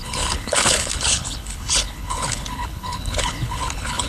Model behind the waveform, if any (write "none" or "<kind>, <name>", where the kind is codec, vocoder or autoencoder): codec, HILCodec